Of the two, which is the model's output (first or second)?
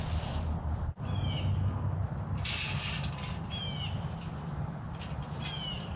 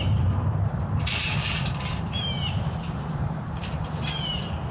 second